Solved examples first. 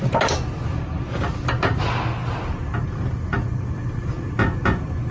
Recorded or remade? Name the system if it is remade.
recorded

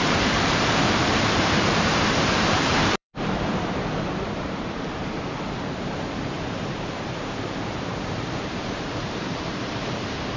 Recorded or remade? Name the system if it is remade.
remade, vocoder, BigVGAN v2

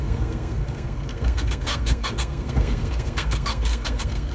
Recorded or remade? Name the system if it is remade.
remade, codec, SNAC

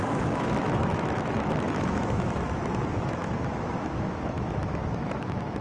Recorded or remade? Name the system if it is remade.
remade, autoencoder, DAC-VAE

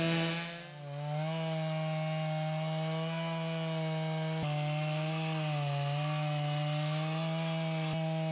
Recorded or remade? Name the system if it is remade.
recorded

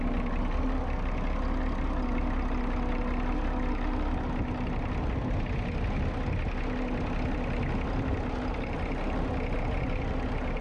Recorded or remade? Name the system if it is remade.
recorded